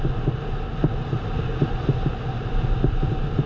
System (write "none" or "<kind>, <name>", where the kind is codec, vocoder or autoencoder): none